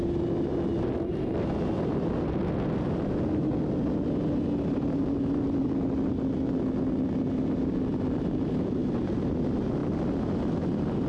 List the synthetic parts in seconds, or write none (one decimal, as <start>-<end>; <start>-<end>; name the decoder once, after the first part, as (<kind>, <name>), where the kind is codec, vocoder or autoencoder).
none